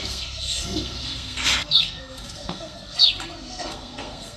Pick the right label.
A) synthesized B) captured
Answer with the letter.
A